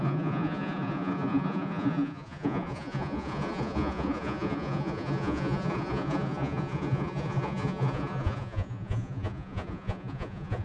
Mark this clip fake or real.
fake